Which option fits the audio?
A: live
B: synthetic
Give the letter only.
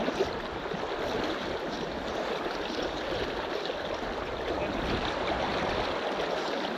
A